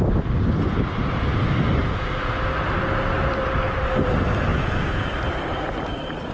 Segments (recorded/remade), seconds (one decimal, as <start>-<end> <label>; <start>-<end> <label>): 0.0-1.8 recorded; 1.8-2.3 remade; 2.3-4.5 recorded; 4.5-5.1 remade; 5.1-6.3 recorded